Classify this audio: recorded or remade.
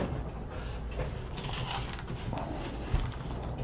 recorded